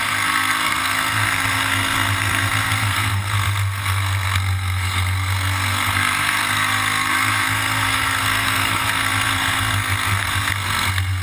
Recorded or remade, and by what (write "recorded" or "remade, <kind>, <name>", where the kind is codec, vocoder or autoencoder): remade, codec, SNAC